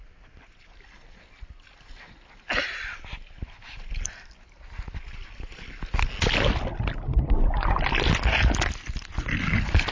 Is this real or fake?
real